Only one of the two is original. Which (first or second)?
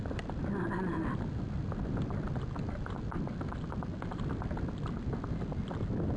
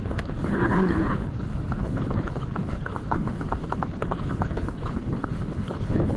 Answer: first